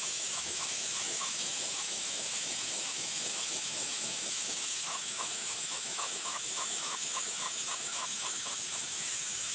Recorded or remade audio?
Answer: remade